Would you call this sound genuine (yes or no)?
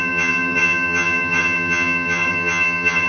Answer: no